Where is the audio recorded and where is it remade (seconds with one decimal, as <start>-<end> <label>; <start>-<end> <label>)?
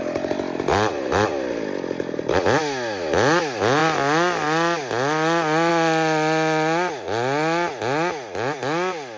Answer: 0.0-9.2 recorded